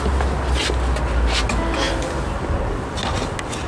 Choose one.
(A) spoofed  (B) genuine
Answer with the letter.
B